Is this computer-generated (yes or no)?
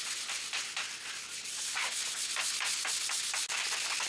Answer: no